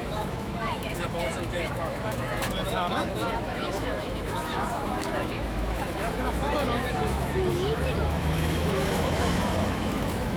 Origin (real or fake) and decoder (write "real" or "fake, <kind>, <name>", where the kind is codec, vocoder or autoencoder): fake, autoencoder, DAC-VAE